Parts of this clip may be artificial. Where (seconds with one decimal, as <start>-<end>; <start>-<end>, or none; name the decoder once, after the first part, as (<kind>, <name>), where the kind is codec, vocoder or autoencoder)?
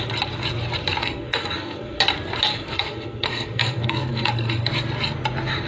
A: 1.0-2.0 (codec, SNAC); 2.5-4.7